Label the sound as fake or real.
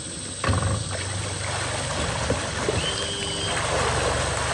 real